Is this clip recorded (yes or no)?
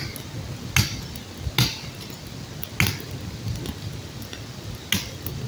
yes